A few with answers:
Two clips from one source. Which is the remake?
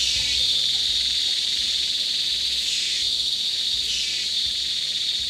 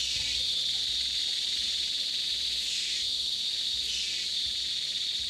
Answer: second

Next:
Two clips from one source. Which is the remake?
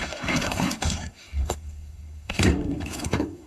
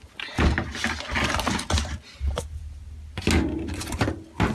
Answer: first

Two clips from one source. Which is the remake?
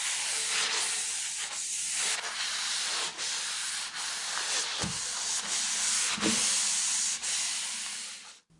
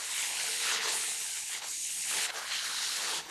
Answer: second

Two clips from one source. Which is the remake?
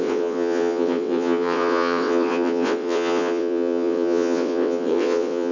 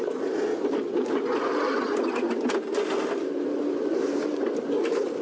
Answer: first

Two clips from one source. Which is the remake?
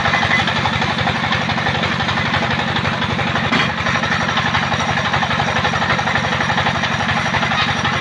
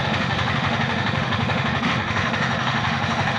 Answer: second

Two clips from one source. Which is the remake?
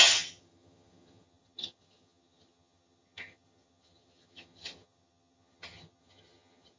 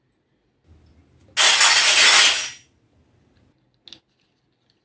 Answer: first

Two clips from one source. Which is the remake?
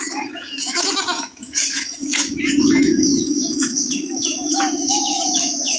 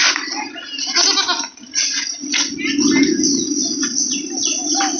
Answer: first